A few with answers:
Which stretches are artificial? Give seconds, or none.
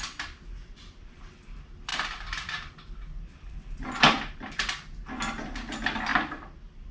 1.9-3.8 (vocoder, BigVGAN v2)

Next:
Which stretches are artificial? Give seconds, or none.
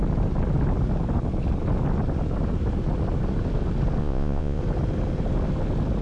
4.0-4.6 (vocoder, Vocos)